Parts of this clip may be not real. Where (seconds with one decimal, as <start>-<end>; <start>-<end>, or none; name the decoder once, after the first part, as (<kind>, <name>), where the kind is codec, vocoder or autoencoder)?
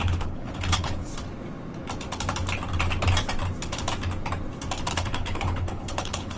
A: 0.0-1.1 (codec, HILCodec); 4.9-6.4